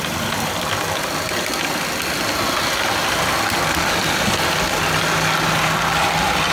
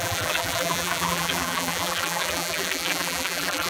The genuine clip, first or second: first